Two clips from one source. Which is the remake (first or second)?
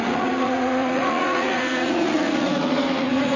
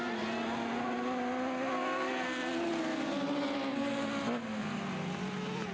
first